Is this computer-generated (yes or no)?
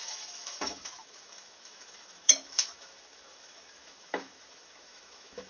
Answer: yes